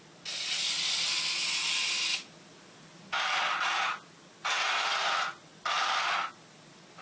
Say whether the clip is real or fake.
real